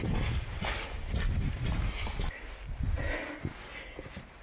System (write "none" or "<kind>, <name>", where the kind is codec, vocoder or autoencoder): none